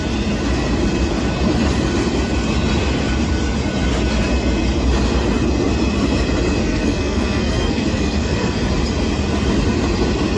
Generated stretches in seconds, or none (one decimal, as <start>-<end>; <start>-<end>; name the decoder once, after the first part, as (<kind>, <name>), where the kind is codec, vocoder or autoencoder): 6.6-8.6 (codec, SNAC)